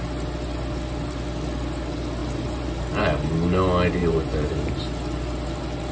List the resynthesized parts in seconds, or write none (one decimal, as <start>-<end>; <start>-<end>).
2.2-3.0; 4.0-4.8